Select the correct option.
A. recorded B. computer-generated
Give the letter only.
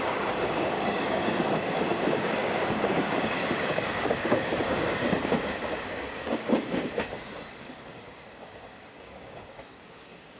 B